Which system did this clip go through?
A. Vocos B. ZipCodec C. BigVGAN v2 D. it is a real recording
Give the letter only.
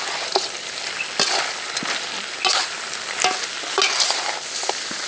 D